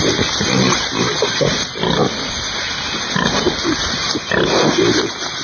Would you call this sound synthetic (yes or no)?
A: no